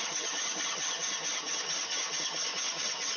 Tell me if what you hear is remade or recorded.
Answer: remade